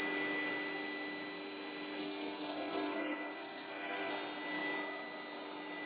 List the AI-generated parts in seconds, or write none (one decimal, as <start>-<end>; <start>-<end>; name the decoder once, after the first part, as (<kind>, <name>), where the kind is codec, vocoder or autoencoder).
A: 2.0-4.1 (codec, SNAC)

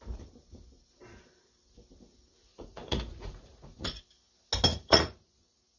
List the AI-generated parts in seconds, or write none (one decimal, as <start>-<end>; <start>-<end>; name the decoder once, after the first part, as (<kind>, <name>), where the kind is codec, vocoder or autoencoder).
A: 2.5-4.0 (vocoder, Vocos); 4.7-5.8

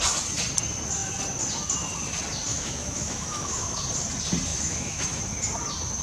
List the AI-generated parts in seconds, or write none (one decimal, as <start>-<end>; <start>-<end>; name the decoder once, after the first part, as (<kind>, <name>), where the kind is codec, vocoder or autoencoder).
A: 2.5-3.8 (autoencoder, DAC-VAE); 4.5-5.2

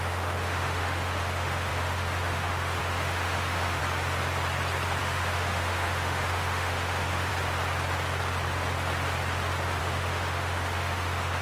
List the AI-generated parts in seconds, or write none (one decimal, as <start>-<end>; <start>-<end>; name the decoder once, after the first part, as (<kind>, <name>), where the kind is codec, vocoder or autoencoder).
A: 0.0-3.8 (autoencoder, DAC-VAE); 5.0-7.3; 9.8-11.4

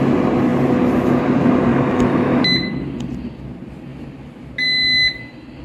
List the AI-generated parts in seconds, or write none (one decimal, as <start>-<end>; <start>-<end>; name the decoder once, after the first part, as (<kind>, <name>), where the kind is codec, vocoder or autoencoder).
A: 1.7-2.4 (autoencoder, DAC-VAE)

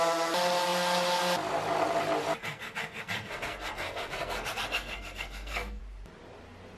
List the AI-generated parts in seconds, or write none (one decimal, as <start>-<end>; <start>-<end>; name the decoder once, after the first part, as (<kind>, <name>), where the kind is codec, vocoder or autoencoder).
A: 2.4-5.8 (codec, SNAC)